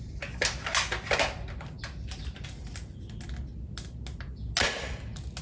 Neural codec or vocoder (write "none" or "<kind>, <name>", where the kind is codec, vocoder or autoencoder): none